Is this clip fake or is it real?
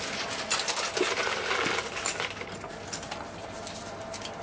real